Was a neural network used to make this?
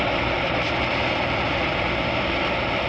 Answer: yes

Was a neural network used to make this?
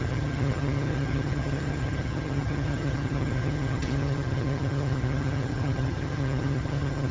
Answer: yes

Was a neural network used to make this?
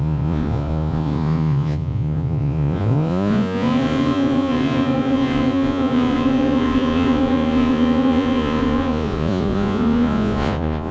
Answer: yes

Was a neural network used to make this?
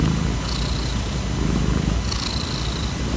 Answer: no